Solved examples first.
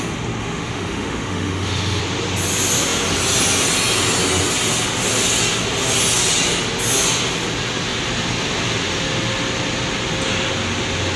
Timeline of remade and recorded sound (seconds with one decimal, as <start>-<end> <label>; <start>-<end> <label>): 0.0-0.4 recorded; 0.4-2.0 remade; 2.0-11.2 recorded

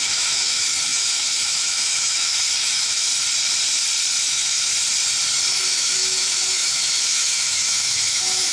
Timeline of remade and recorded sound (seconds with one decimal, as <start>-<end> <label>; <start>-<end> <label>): 0.0-3.1 remade; 3.1-4.2 recorded; 4.2-4.7 remade; 4.7-5.5 recorded; 5.5-8.5 remade

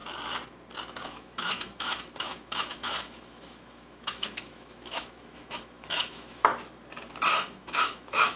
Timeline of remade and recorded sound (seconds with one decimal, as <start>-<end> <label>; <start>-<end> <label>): 0.0-1.0 recorded; 1.0-6.5 remade; 6.5-7.3 recorded; 7.3-8.4 remade

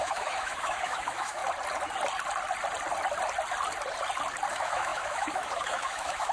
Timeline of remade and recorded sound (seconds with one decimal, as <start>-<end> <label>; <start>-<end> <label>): 0.0-1.4 remade; 1.4-4.5 recorded; 4.5-6.3 remade

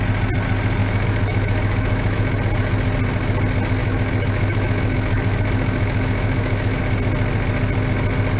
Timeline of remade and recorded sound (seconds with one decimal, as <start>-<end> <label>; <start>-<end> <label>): 0.0-0.8 recorded; 0.8-2.4 remade; 2.4-3.8 recorded; 3.8-6.8 remade; 6.8-8.4 recorded

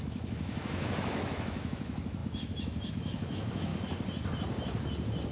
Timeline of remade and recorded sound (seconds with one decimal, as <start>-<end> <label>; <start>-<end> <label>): 0.0-3.7 remade; 3.7-5.3 recorded